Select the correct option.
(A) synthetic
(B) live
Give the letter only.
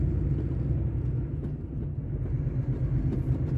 B